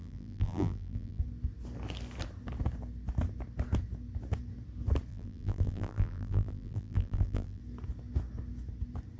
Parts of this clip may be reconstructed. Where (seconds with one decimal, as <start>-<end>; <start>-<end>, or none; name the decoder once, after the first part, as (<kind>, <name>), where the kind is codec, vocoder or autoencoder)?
0.0-1.2 (vocoder, BigVGAN v2); 5.1-7.6